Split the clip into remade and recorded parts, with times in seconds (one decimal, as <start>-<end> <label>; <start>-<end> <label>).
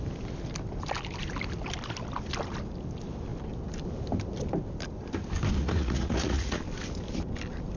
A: 0.0-5.6 recorded; 5.6-6.6 remade; 6.6-7.8 recorded